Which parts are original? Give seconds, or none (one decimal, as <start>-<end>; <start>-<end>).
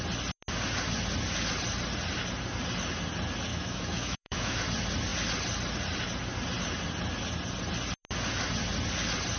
0.0-3.5; 4.6-9.4